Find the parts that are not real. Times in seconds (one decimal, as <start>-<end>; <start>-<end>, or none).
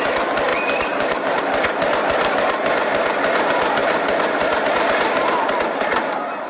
0.5-1.4; 3.8-4.7